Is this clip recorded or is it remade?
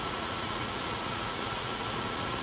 remade